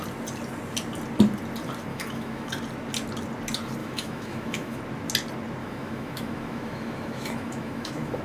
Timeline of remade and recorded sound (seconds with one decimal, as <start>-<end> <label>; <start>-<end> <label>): 0.0-1.9 recorded; 1.9-2.5 remade; 2.5-3.8 recorded; 3.8-4.8 remade; 4.8-5.6 recorded; 5.6-8.2 remade